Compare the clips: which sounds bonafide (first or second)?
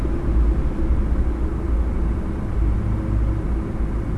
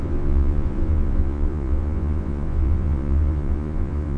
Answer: first